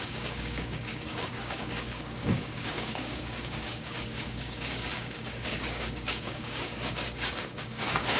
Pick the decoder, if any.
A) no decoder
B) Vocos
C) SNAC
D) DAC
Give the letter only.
D